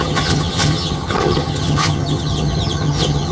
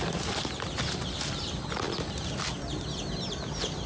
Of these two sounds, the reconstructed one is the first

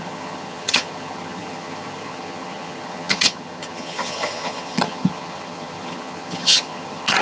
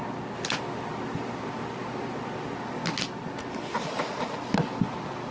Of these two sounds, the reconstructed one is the first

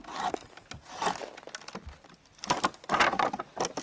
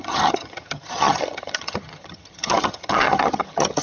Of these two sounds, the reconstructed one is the second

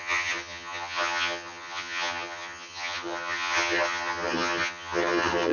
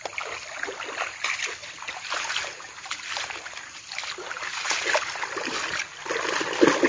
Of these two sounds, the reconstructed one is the first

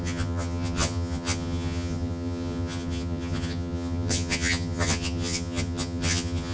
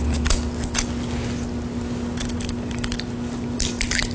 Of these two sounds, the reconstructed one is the first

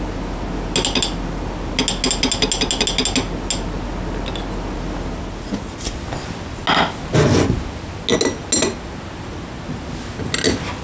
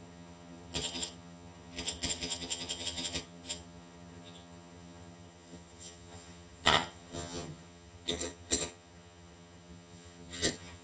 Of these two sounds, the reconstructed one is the second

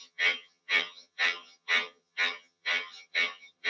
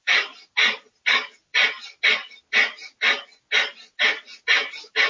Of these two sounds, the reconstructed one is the first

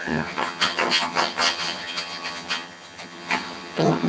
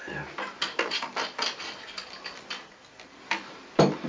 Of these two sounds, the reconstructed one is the first